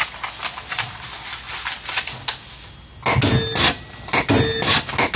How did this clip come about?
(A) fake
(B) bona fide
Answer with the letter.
B